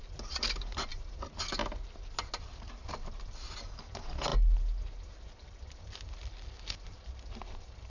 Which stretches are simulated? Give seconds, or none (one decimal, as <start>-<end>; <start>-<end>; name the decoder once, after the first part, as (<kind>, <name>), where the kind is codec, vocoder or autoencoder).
none